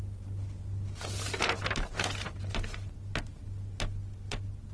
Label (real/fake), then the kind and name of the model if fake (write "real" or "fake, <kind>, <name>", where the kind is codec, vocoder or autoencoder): real